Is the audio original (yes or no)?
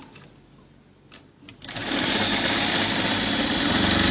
yes